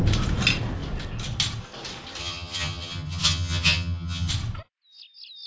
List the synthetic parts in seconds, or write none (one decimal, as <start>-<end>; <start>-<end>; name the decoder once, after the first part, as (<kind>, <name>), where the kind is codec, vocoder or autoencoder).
2.2-4.3 (vocoder, HiFi-GAN)